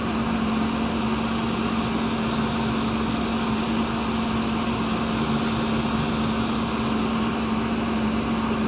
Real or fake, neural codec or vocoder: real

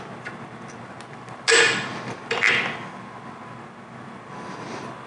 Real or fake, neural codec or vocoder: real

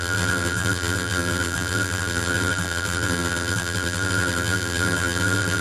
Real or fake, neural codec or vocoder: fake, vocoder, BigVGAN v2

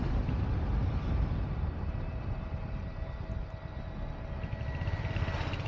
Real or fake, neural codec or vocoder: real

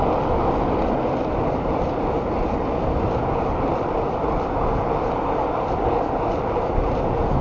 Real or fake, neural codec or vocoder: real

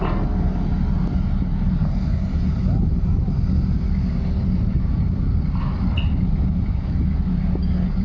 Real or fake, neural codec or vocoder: real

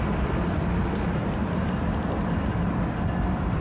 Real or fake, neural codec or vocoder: fake, vocoder, BigVGAN v2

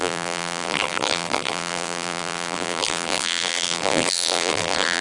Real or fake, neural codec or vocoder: fake, vocoder, BigVGAN v2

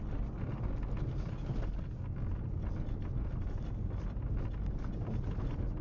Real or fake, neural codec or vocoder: real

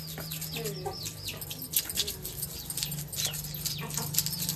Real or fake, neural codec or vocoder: real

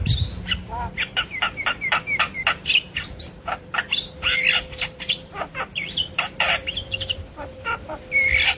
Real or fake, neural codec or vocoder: fake, vocoder, BigVGAN v2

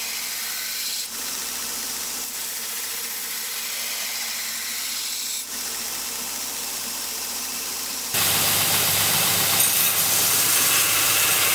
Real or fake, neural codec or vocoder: fake, vocoder, BigVGAN v2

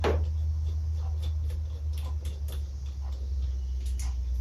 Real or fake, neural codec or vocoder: real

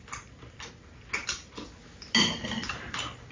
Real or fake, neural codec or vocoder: real